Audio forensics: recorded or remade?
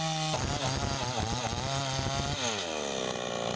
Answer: recorded